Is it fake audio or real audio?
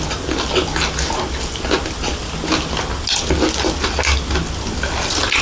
real